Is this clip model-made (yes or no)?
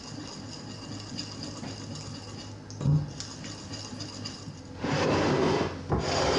no